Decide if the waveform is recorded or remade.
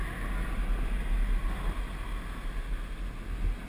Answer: recorded